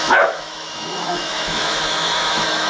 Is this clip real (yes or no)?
no